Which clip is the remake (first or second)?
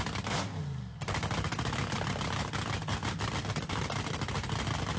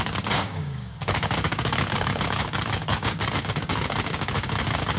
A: second